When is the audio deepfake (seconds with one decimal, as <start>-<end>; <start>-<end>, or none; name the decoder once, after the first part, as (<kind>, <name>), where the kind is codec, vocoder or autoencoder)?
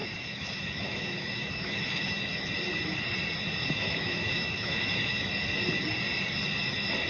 0.0-2.2 (autoencoder, DAC-VAE); 3.6-5.2